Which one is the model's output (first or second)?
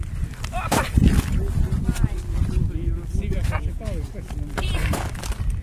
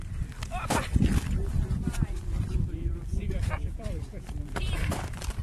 second